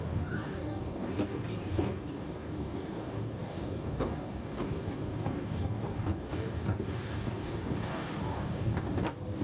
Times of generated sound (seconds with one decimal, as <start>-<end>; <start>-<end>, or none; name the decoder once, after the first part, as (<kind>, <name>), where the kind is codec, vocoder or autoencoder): 0.0-9.4 (codec, DAC)